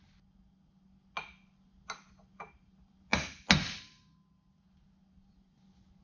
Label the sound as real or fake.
real